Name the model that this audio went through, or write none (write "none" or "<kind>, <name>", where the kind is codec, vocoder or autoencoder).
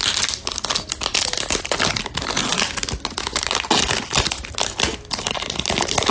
none